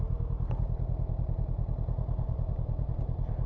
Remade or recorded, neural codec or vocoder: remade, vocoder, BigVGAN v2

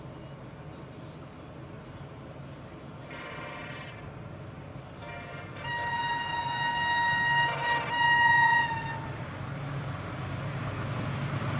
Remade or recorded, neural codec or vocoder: recorded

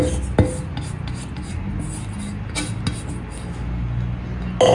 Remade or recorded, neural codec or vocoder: recorded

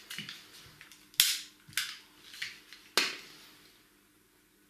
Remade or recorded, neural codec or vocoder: recorded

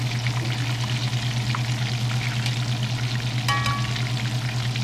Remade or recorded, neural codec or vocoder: recorded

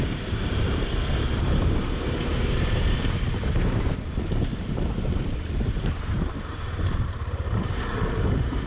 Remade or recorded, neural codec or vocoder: remade, vocoder, BigVGAN v2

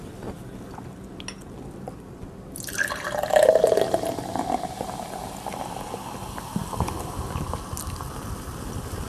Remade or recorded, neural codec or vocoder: recorded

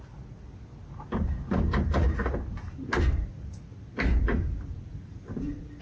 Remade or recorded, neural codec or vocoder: recorded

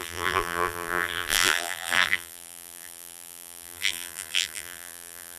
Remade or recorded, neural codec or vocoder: remade, vocoder, BigVGAN v2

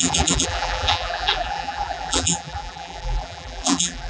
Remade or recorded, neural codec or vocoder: remade, vocoder, BigVGAN v2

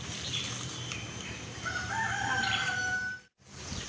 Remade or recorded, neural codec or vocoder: remade, vocoder, BigVGAN v2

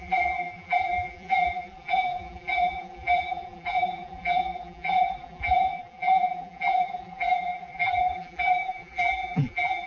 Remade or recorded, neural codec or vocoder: remade, vocoder, BigVGAN v2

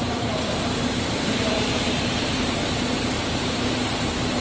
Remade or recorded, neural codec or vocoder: remade, vocoder, BigVGAN v2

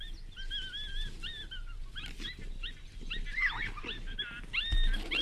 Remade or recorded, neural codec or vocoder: recorded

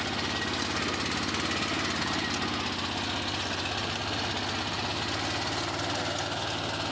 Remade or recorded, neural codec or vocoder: recorded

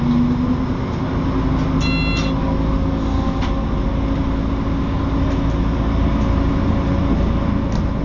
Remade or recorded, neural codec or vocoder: recorded